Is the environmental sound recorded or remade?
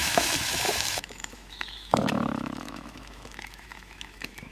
remade